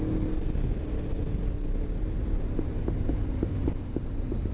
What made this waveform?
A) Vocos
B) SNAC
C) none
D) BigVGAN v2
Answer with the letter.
C